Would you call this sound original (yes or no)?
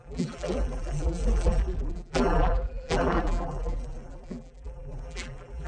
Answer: no